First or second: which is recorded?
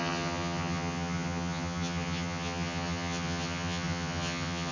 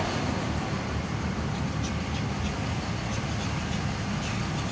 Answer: second